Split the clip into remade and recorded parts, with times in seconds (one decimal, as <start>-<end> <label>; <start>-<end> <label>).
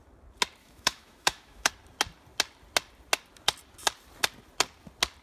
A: 0.0-0.6 recorded; 0.6-1.7 remade; 1.7-5.2 recorded